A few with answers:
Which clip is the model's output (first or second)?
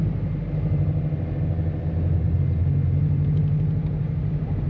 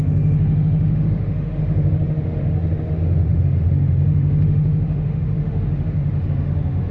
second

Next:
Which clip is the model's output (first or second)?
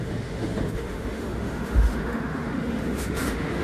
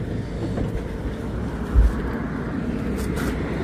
first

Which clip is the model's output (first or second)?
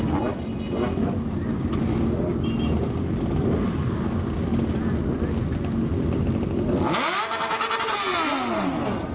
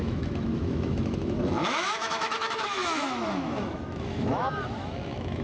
second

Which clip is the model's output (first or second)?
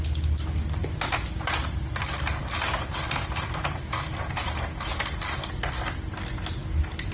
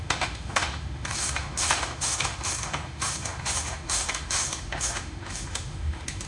second